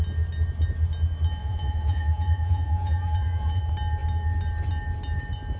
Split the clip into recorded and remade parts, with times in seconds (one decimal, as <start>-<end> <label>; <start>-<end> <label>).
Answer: 0.0-1.4 recorded; 1.4-3.6 remade; 3.6-5.6 recorded